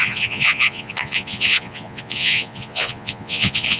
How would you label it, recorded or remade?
remade